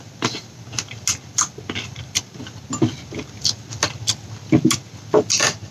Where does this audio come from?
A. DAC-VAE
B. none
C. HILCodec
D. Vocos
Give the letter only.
B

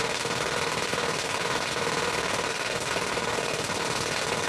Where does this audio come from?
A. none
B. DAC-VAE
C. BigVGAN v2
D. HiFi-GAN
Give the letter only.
B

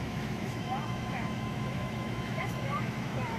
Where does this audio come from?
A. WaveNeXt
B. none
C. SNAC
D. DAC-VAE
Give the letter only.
D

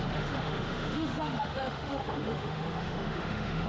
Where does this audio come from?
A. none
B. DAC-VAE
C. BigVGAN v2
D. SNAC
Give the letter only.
B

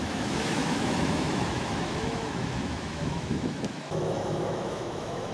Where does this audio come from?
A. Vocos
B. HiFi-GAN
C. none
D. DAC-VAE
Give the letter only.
D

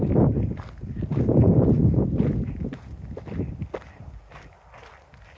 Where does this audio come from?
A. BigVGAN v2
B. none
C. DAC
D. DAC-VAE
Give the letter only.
B